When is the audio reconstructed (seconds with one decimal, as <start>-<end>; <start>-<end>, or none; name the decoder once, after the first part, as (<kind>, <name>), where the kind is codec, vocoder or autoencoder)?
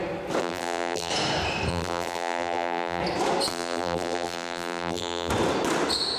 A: 0.4-1.1 (vocoder, BigVGAN v2); 1.7-3.0; 3.5-5.3